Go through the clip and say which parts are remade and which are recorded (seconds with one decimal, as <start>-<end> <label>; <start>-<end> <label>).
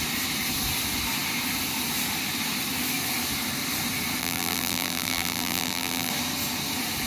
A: 0.0-4.2 recorded; 4.2-6.1 remade; 6.1-7.1 recorded